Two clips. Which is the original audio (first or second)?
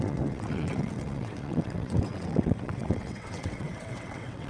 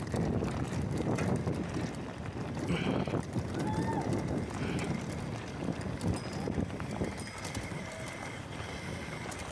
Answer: second